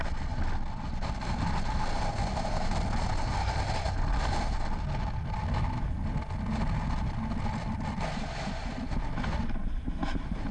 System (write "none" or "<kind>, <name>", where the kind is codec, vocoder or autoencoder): none